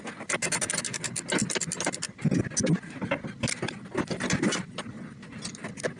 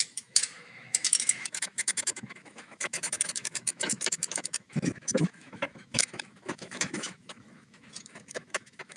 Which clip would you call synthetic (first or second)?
second